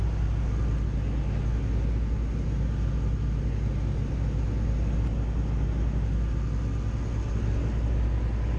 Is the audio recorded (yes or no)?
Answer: yes